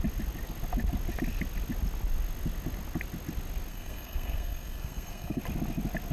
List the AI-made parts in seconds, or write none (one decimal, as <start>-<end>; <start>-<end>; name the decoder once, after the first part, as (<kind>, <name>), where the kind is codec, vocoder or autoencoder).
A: 3.7-5.4 (codec, SNAC)